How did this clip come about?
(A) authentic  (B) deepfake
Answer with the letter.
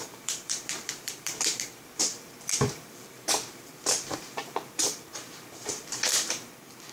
B